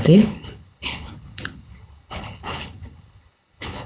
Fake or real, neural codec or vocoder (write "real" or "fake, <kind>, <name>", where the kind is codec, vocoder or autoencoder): fake, codec, HILCodec